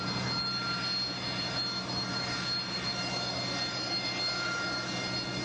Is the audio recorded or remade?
recorded